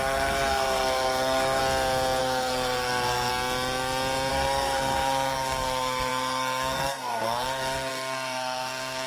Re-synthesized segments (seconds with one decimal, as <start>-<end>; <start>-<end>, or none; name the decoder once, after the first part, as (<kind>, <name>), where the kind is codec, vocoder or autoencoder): 0.0-1.6 (codec, SNAC); 2.2-3.3; 4.3-9.1